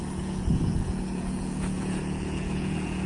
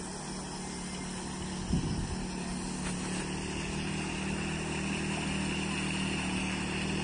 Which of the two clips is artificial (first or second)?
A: first